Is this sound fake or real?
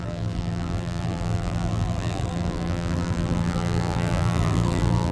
fake